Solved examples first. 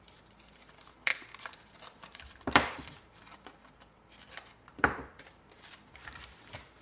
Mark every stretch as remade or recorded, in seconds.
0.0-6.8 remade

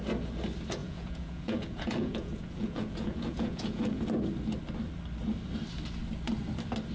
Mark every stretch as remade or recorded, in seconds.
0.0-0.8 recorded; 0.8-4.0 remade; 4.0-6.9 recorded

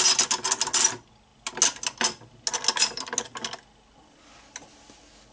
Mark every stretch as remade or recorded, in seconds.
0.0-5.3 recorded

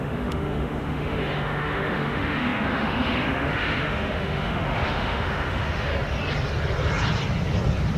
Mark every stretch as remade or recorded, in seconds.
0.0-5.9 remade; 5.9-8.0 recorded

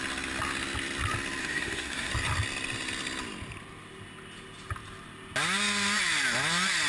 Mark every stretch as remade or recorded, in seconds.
0.0-1.4 recorded; 1.4-2.1 remade; 2.1-6.9 recorded

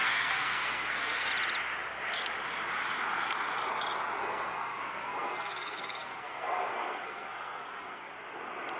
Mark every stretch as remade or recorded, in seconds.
0.0-1.3 remade; 1.3-4.2 recorded; 4.2-8.1 remade; 8.1-8.8 recorded

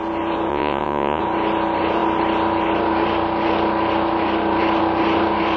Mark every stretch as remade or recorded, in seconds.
0.0-0.5 recorded; 0.5-1.2 remade; 1.2-5.6 recorded